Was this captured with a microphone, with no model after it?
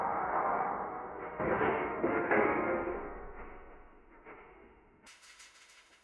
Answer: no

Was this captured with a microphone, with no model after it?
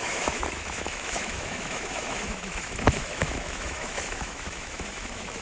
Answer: no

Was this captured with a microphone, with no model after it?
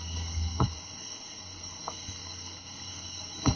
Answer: no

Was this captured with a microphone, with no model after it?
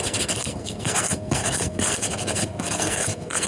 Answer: no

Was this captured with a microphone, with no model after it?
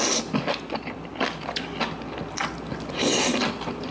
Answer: yes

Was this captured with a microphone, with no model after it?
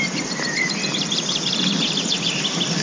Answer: yes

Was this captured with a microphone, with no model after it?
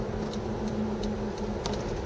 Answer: yes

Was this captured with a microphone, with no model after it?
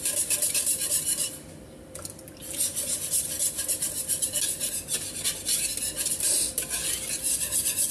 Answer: yes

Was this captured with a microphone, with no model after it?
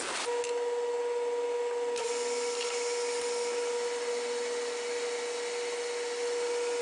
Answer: yes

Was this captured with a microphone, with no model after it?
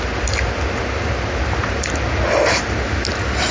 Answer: yes